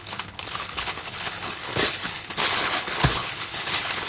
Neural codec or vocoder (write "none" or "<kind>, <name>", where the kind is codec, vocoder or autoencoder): codec, HILCodec